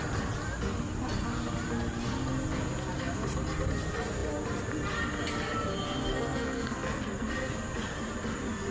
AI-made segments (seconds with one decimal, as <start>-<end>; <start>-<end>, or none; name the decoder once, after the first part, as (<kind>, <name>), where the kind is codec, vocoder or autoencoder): 6.1-7.3 (codec, SNAC)